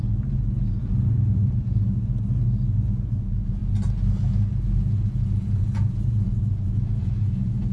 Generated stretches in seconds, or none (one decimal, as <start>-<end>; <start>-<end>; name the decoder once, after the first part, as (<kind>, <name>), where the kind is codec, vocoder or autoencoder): 0.0-3.6 (vocoder, Vocos); 5.1-7.7